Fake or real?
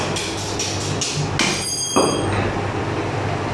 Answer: real